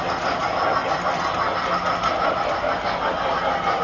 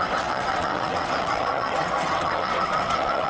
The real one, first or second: first